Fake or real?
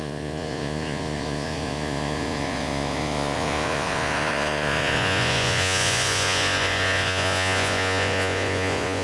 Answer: fake